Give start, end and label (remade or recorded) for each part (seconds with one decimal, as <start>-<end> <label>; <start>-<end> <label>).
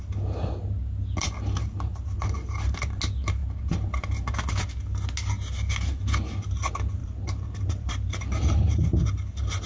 0.0-7.0 recorded; 7.0-9.1 remade; 9.1-9.7 recorded